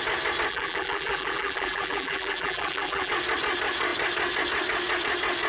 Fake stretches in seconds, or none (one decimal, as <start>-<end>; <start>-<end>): 0.5-3.1